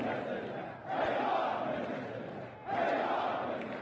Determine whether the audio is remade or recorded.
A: recorded